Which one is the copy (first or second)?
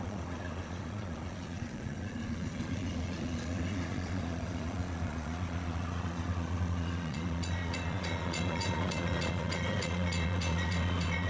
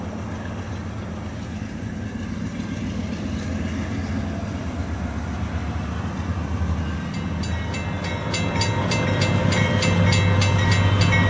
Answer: first